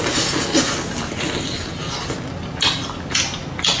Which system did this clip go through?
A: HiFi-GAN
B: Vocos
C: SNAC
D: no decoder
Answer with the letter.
D